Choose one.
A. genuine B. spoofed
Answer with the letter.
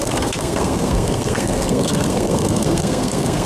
B